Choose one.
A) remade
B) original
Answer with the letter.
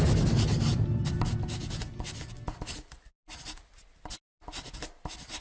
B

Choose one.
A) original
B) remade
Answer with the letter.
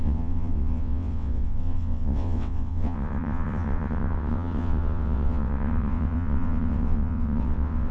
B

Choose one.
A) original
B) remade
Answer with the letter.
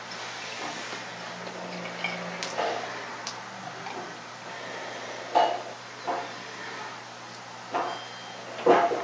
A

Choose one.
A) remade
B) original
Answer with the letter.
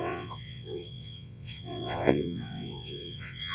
A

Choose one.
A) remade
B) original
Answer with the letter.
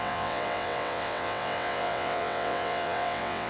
A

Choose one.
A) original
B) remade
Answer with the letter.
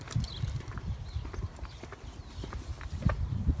A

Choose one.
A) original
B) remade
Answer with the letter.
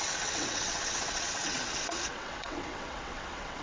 B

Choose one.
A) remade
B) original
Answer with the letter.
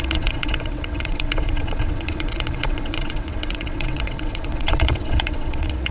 A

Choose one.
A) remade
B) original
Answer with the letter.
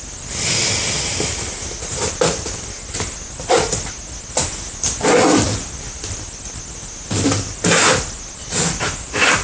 B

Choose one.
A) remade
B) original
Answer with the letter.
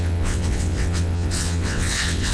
A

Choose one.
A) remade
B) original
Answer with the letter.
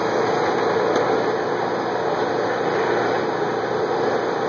B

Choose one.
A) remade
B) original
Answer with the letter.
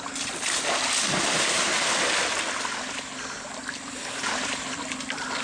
B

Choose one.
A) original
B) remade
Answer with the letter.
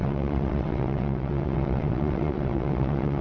B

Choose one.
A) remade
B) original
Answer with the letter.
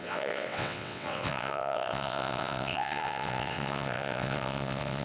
A